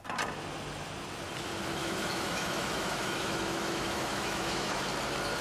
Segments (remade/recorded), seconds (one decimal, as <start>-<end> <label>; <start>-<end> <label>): 0.0-1.8 recorded; 1.8-4.8 remade; 4.8-5.4 recorded